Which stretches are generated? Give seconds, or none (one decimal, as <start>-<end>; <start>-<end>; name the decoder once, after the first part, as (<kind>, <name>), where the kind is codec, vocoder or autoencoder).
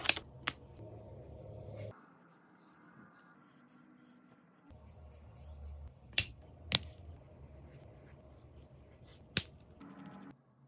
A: none